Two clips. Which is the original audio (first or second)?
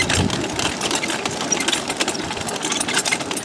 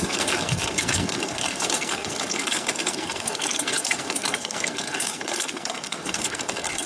first